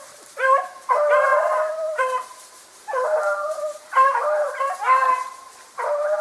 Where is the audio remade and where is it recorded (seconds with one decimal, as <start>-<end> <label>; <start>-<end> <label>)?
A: 0.0-6.2 remade

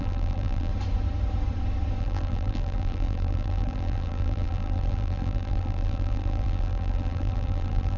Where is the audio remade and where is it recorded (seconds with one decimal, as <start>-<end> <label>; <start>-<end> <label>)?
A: 0.0-0.7 remade; 0.7-2.0 recorded; 2.0-8.0 remade